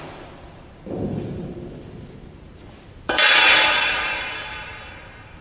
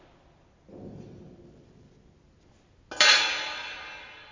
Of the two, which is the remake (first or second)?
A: first